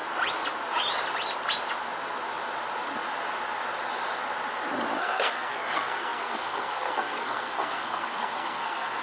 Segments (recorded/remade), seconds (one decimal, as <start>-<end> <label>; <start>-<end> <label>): 0.0-5.0 recorded; 5.0-9.0 remade